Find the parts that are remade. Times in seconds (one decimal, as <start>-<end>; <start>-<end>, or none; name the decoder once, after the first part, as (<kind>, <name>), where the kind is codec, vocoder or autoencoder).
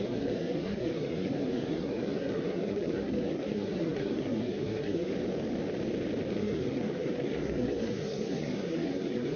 0.0-5.1 (codec, SNAC); 6.3-9.4